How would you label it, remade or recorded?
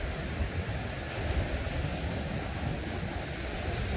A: recorded